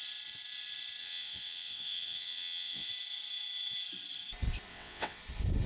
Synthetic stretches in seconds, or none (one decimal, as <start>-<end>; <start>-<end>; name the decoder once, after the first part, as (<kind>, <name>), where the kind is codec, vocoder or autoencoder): 1.0-2.9 (vocoder, WaveNeXt); 4.7-5.2